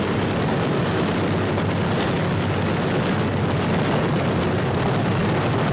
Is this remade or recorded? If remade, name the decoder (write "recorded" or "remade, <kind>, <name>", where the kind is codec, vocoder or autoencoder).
recorded